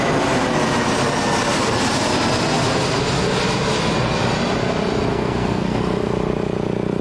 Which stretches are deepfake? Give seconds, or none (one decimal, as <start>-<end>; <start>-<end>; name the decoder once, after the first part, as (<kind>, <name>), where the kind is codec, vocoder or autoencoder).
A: 5.1-5.8 (codec, SNAC)